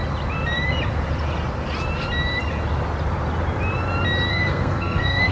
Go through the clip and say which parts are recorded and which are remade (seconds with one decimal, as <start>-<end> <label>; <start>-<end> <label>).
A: 0.0-4.3 recorded; 4.3-5.3 remade